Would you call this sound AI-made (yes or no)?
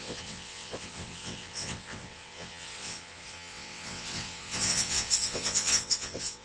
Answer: yes